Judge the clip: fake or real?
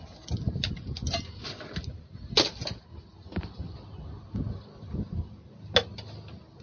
real